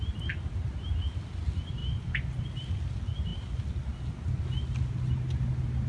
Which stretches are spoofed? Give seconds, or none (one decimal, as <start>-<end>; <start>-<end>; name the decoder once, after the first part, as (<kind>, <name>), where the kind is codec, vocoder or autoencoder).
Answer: none